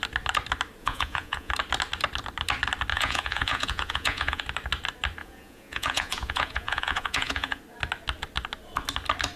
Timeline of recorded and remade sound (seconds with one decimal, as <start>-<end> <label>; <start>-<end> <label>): 0.0-0.8 recorded; 0.8-1.5 remade; 1.5-2.9 recorded; 2.9-4.4 remade; 4.4-5.2 recorded; 5.2-7.6 remade; 7.6-9.4 recorded

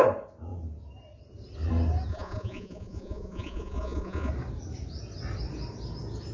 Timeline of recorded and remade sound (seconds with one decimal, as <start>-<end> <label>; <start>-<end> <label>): 0.0-2.1 recorded; 2.1-4.3 remade; 4.3-6.3 recorded

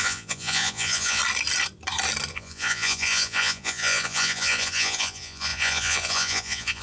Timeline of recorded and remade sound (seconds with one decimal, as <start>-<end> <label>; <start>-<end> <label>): 0.0-1.2 remade; 1.2-2.3 recorded; 2.3-6.8 remade

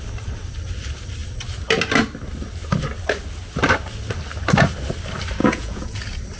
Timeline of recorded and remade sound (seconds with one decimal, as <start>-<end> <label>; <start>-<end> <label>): 0.0-5.4 recorded; 5.4-6.0 remade; 6.0-6.4 recorded

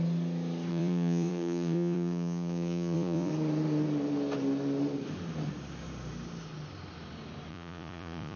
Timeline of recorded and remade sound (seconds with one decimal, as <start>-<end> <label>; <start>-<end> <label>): 0.0-0.7 recorded; 0.7-3.3 remade; 3.3-7.5 recorded; 7.5-8.4 remade

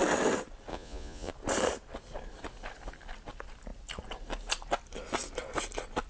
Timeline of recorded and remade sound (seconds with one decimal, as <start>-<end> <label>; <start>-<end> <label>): 0.0-0.7 recorded; 0.7-1.3 remade; 1.3-6.1 recorded